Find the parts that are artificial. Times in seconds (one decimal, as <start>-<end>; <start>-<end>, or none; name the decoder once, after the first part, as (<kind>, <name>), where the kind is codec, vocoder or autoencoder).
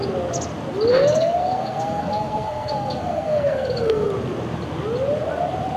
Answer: 0.9-4.1 (codec, SNAC)